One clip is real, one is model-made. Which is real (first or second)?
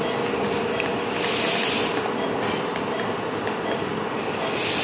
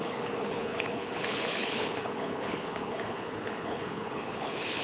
first